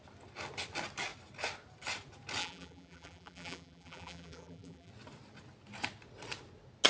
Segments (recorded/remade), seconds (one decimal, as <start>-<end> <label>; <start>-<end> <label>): 0.0-2.4 recorded; 2.4-4.9 remade; 4.9-6.9 recorded